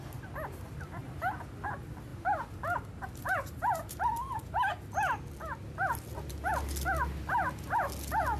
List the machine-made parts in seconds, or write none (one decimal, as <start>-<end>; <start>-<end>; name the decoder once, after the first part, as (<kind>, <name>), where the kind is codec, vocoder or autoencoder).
1.0-1.7 (vocoder, BigVGAN v2); 2.1-4.7